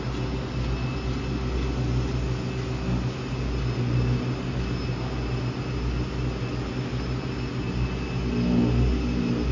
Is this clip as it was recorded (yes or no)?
yes